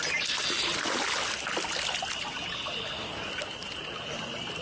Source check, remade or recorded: recorded